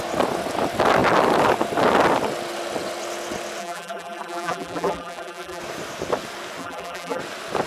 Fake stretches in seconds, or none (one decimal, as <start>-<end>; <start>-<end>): 3.6-5.6; 6.6-7.2